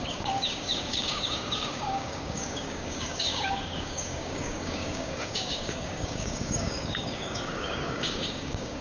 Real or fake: fake